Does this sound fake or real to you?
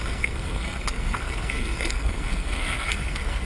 fake